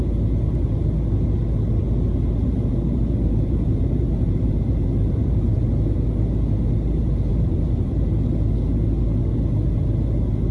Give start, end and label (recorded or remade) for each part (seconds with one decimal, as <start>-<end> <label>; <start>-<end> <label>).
0.0-2.5 recorded; 2.5-5.6 remade; 5.6-7.3 recorded; 7.3-8.2 remade; 8.2-10.5 recorded